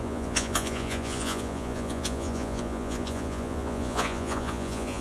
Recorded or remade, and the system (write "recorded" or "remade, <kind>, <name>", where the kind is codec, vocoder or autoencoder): remade, vocoder, Vocos